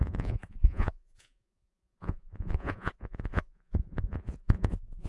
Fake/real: fake